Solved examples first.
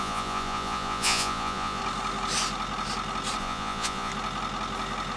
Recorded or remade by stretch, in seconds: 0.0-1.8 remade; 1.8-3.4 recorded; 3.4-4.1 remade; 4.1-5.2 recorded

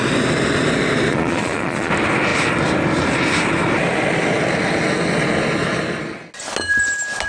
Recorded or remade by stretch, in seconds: 0.0-1.1 recorded; 1.1-1.9 remade; 1.9-7.3 recorded

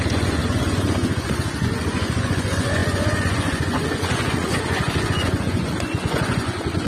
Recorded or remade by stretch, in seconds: 0.0-6.9 remade